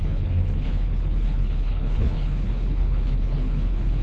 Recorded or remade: remade